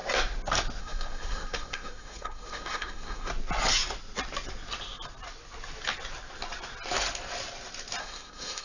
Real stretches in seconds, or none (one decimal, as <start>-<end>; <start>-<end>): 0.0-0.8; 3.3-8.0